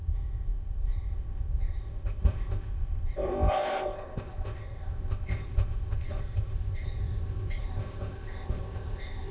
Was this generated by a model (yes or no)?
yes